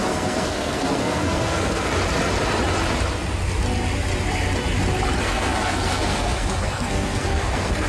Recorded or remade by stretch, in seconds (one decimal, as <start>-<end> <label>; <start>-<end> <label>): 0.0-1.9 remade; 1.9-5.2 recorded; 5.2-7.9 remade

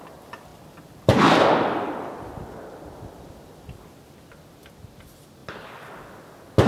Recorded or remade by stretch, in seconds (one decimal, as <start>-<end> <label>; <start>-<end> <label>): 0.0-0.5 recorded; 0.5-2.1 remade; 2.1-6.7 recorded

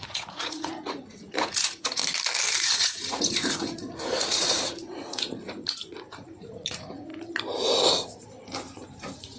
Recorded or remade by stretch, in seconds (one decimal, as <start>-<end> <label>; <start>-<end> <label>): 0.0-2.0 remade; 2.0-2.6 recorded; 2.6-7.1 remade; 7.1-8.9 recorded; 8.9-9.4 remade

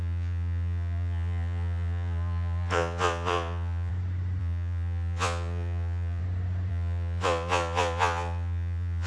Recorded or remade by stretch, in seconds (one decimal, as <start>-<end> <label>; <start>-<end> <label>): 0.0-3.9 remade; 3.9-4.4 recorded; 4.4-6.2 remade; 6.2-6.7 recorded; 6.7-9.1 remade

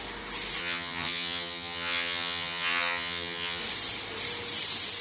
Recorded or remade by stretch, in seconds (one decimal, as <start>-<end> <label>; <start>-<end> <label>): 0.0-0.6 recorded; 0.6-3.6 remade; 3.6-5.0 recorded